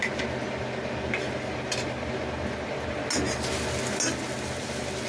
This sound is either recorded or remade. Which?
recorded